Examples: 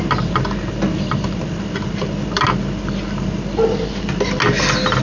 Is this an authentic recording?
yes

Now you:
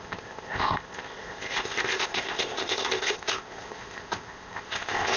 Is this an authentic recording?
no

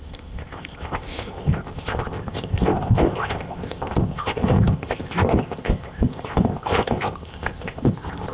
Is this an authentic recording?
no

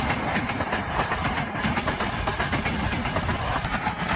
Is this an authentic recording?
yes